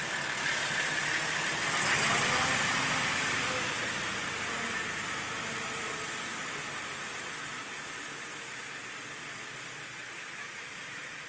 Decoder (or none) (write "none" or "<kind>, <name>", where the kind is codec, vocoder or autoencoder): none